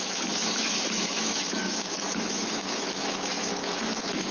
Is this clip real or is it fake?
fake